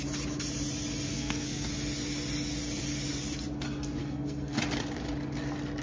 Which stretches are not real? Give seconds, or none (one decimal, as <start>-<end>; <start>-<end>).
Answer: 1.1-1.7; 4.0-4.6